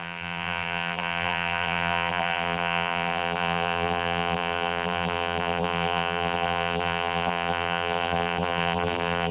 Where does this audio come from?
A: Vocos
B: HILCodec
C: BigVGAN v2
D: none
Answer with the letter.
C